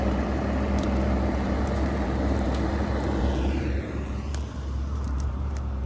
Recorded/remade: remade